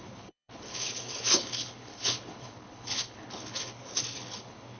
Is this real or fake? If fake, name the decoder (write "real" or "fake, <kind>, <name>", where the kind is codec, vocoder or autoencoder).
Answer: fake, codec, HILCodec